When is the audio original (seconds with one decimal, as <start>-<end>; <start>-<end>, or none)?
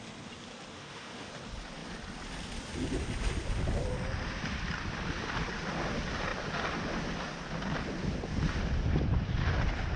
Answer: 0.0-0.7; 1.3-10.0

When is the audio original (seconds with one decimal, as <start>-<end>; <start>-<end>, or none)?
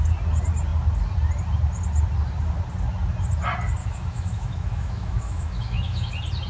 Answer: 0.0-3.8; 6.1-6.5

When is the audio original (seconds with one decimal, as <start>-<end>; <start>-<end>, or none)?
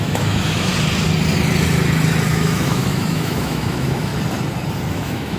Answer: 0.7-2.3; 4.1-4.9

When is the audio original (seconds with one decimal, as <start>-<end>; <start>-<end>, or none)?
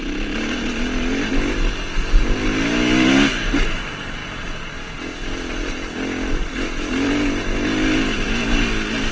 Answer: 0.0-9.1